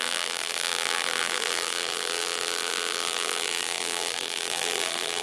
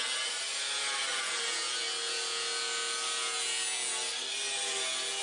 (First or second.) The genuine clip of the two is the second